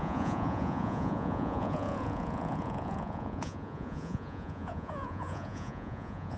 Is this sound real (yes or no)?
no